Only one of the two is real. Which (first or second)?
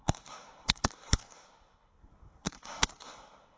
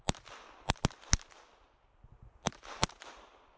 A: second